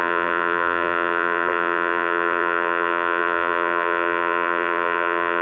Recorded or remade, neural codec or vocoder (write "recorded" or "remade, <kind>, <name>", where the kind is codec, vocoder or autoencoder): remade, vocoder, BigVGAN v2